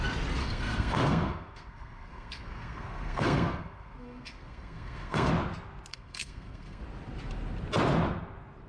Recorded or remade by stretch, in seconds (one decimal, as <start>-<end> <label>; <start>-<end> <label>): 0.0-0.4 recorded; 0.4-5.3 remade; 5.3-5.9 recorded; 5.9-6.8 remade; 6.8-8.7 recorded